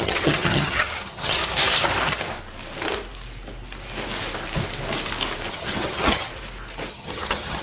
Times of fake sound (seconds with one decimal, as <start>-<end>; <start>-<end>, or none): 0.0-1.4; 5.5-6.3; 6.9-7.6